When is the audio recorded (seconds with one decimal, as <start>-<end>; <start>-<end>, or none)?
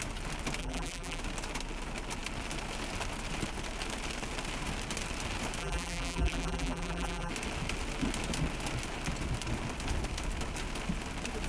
0.0-0.6; 1.2-5.6; 7.3-11.5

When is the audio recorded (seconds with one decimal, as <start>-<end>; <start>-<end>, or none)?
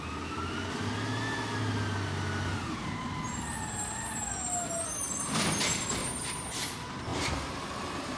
0.0-2.5; 3.2-6.0; 6.6-7.1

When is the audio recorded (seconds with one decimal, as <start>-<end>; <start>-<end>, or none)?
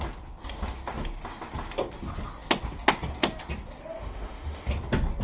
0.0-3.9; 4.7-5.2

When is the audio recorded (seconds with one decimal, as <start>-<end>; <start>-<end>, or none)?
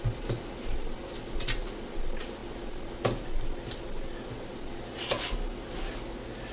0.0-6.5